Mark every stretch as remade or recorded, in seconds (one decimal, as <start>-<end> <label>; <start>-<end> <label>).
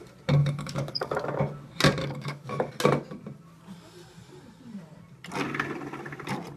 0.0-0.4 recorded; 0.4-1.4 remade; 1.4-2.0 recorded; 2.0-2.7 remade; 2.7-6.6 recorded